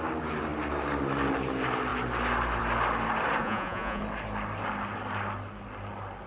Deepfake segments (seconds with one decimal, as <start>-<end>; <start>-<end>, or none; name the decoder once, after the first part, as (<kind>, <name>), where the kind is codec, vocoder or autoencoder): 3.4-4.0 (vocoder, Vocos)